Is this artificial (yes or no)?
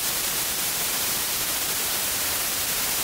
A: yes